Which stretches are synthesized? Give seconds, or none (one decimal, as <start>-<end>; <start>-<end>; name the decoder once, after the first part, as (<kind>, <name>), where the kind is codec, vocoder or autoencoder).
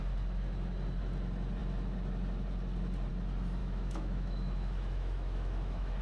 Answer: 3.6-6.0 (autoencoder, DAC-VAE)